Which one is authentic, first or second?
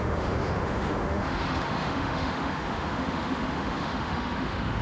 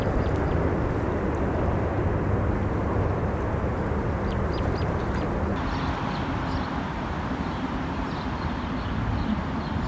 second